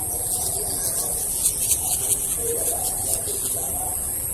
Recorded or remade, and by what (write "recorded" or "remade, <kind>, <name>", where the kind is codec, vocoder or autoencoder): remade, vocoder, BigVGAN v2